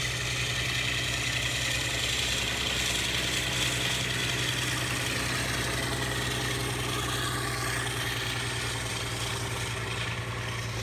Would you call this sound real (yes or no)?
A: yes